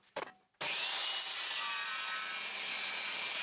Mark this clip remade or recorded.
recorded